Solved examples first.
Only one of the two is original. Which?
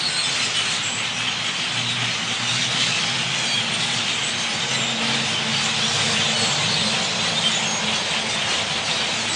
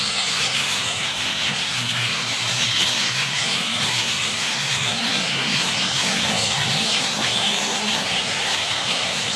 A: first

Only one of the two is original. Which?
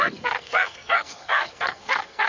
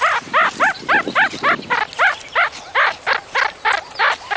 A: second